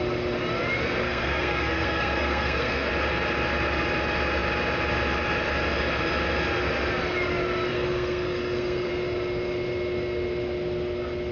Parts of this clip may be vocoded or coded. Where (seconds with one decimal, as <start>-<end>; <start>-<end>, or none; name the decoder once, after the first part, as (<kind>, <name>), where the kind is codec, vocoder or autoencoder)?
1.0-2.9 (codec, SNAC); 7.7-8.9